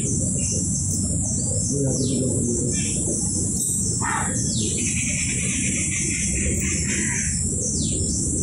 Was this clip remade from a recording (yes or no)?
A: no